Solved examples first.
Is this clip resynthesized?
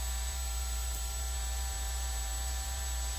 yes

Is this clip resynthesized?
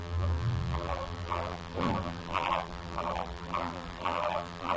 yes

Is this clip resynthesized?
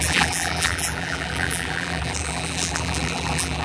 yes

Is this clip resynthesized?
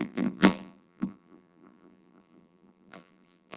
yes